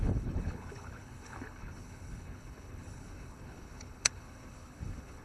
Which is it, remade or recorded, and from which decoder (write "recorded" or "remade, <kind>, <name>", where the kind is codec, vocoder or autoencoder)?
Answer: remade, codec, HILCodec